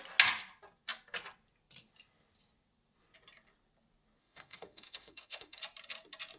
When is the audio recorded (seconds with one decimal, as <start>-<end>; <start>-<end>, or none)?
0.0-4.2; 5.6-6.4